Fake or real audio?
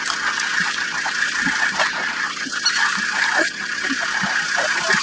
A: real